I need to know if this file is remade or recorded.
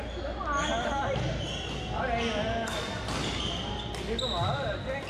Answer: recorded